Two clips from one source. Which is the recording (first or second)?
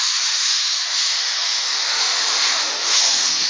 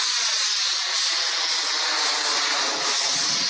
second